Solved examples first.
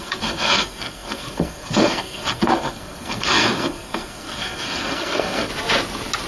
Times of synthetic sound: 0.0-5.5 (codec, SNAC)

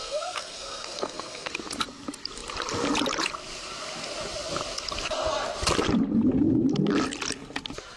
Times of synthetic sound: 0.0-1.5 (codec, SNAC)